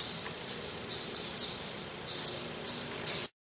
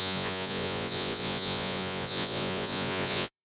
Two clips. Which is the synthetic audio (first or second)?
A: second